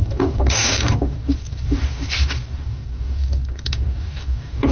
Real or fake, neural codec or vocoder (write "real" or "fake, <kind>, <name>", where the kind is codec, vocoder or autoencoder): fake, codec, DAC